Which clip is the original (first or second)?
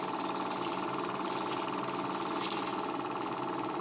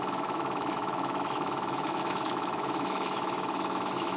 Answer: first